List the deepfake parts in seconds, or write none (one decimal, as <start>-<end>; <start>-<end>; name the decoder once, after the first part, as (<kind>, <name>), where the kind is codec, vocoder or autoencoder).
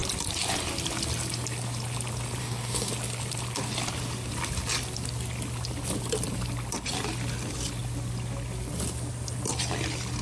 2.4-2.9 (codec, DAC)